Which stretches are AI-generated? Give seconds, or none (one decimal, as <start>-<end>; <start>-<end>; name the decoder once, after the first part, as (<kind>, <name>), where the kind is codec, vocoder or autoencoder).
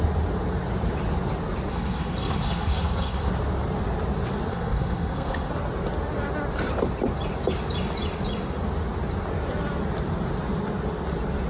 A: 1.7-3.3 (codec, SNAC); 4.5-5.5